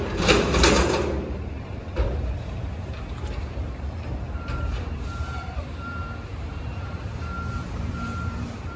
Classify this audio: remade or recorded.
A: remade